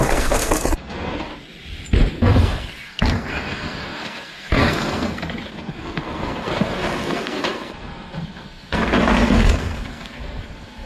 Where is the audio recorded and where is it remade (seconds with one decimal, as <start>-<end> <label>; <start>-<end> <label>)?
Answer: 0.0-1.3 remade; 1.3-2.1 recorded; 2.1-10.9 remade